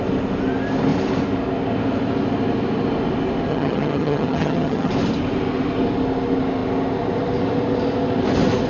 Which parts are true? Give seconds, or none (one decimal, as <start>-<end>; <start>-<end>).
0.0-3.5; 4.9-8.7